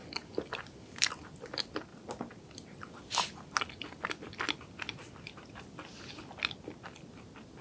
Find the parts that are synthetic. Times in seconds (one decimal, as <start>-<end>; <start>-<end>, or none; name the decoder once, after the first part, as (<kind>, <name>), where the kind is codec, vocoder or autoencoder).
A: none